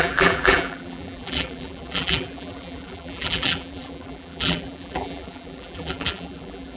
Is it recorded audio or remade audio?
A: remade